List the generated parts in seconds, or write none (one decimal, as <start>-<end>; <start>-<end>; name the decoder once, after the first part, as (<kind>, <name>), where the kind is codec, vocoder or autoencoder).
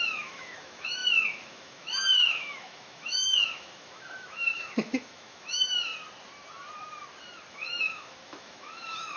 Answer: 0.0-5.9 (autoencoder, DAC-VAE); 7.5-9.2